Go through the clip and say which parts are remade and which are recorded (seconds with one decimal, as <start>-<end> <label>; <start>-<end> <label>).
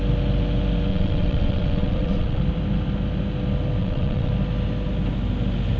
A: 0.0-0.9 recorded; 0.9-2.4 remade; 2.4-3.8 recorded; 3.8-4.3 remade; 4.3-5.8 recorded